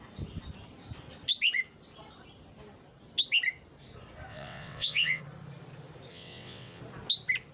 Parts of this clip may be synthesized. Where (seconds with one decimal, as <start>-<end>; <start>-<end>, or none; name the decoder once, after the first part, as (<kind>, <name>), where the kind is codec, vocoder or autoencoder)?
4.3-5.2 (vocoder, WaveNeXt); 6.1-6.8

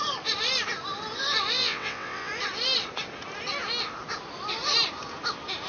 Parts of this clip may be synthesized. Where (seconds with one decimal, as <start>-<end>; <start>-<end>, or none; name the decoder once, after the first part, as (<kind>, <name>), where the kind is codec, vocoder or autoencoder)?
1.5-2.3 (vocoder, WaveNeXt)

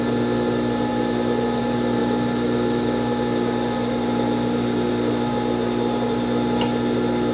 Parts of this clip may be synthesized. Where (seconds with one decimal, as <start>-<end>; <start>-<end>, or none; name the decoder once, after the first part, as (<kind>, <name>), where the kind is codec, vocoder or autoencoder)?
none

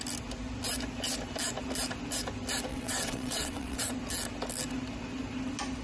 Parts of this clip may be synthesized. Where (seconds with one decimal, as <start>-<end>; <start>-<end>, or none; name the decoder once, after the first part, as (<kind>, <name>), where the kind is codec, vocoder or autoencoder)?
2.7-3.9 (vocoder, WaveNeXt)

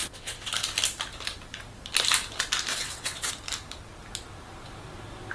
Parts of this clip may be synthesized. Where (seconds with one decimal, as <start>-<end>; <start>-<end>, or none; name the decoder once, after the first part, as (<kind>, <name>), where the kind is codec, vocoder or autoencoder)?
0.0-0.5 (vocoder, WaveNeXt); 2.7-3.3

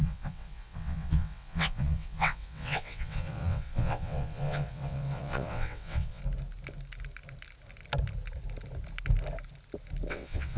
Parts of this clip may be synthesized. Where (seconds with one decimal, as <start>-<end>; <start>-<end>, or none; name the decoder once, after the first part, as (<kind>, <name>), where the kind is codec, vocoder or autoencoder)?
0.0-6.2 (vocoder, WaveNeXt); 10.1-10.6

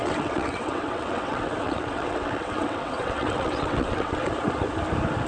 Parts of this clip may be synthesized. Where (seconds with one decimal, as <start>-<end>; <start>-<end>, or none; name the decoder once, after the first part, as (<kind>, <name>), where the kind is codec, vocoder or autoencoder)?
0.0-4.2 (vocoder, WaveNeXt)